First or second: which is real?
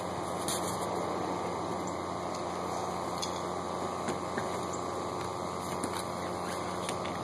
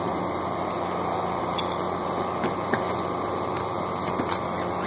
first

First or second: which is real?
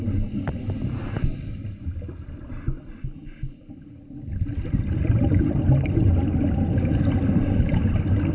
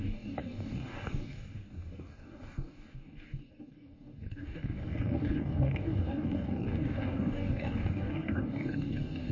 first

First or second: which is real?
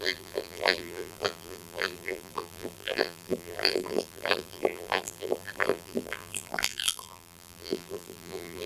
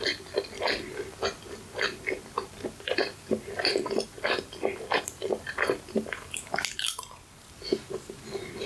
second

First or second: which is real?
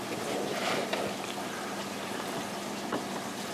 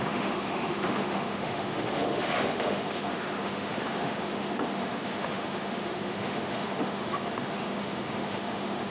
first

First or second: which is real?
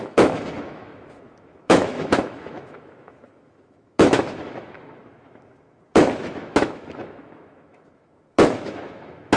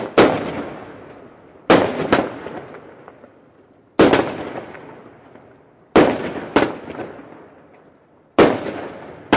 second